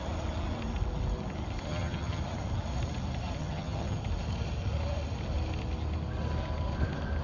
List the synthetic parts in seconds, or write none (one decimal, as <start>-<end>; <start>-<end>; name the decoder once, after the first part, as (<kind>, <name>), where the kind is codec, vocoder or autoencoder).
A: 1.7-2.2 (vocoder, HiFi-GAN); 3.4-4.0